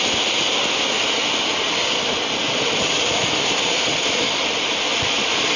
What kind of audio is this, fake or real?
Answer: real